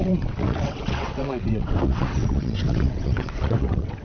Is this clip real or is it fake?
fake